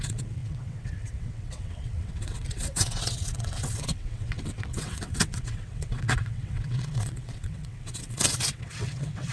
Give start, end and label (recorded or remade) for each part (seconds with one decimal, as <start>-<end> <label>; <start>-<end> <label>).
0.0-9.3 remade